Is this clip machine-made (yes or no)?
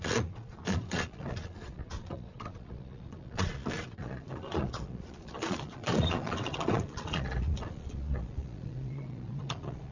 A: yes